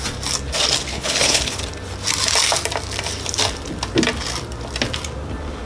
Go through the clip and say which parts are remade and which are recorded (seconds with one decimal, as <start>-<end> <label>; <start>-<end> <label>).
0.0-0.9 recorded; 0.9-1.6 remade; 1.6-5.7 recorded